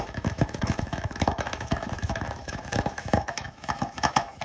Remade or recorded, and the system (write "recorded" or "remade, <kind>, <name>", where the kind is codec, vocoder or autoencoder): remade, autoencoder, DAC-VAE